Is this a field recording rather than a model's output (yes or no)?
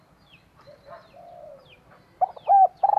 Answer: yes